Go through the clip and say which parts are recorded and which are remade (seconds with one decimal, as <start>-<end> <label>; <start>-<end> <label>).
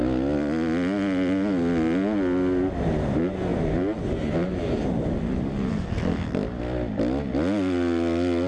0.0-8.5 recorded